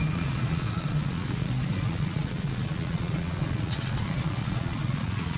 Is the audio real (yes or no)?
no